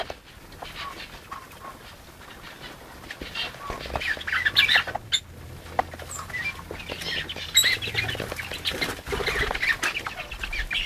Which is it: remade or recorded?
recorded